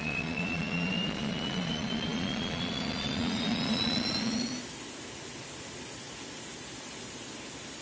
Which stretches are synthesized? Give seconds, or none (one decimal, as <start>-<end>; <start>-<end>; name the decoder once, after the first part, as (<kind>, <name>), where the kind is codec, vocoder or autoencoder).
0.0-4.5 (vocoder, Vocos)